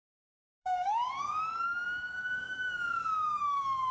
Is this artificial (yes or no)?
yes